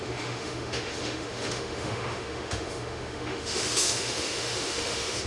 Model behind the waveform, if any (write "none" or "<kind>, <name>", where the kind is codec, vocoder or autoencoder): autoencoder, DAC-VAE